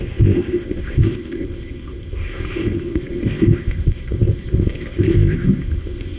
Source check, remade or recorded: remade